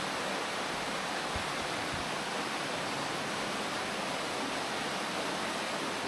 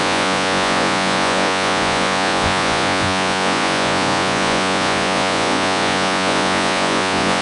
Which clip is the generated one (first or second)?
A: second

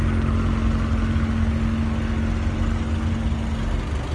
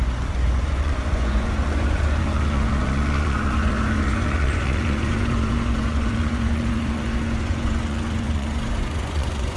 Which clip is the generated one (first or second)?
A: second